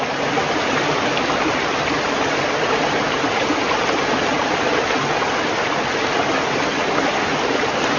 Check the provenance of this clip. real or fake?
real